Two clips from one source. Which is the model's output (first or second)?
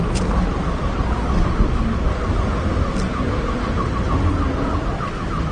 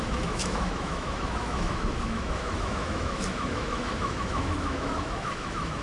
second